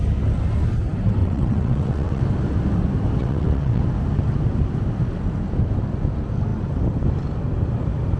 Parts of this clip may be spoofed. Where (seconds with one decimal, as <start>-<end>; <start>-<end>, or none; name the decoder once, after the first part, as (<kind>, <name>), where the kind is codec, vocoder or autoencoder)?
1.2-2.2 (vocoder, WaveNeXt); 3.2-3.8